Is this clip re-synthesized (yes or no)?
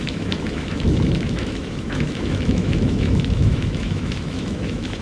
yes